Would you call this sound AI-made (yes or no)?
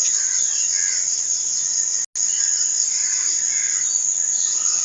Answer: no